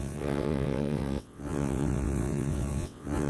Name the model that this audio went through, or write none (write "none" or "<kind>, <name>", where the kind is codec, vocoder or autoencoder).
vocoder, WaveNeXt